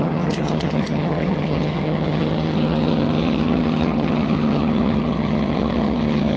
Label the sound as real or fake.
fake